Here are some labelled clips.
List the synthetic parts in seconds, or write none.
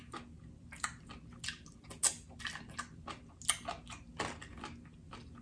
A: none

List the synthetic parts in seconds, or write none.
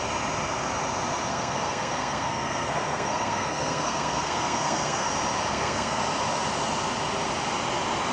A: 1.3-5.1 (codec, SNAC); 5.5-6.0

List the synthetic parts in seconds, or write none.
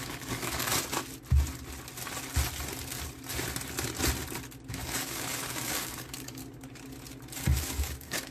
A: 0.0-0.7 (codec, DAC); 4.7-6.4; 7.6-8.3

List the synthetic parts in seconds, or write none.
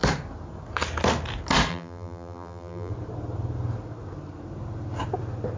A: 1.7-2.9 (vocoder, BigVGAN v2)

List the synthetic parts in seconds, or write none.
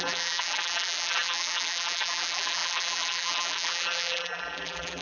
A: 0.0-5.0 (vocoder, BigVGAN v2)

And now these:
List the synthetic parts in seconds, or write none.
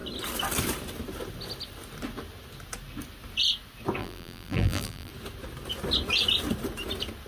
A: 4.0-5.1 (vocoder, BigVGAN v2)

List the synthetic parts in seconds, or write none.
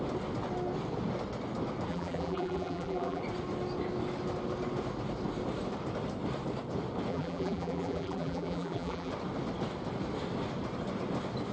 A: 1.9-3.2 (vocoder, BigVGAN v2); 7.1-9.1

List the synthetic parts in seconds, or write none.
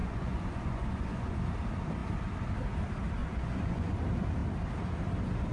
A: 0.0-1.4 (vocoder, Vocos); 3.2-3.9